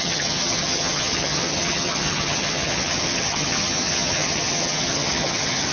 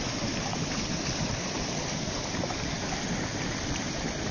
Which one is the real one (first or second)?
second